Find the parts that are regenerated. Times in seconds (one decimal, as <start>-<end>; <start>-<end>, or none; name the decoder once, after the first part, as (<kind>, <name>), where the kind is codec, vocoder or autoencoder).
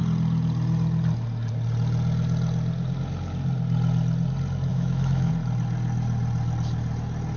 4.7-5.3 (autoencoder, DAC-VAE)